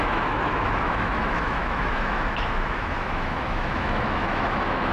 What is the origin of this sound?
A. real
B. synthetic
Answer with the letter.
B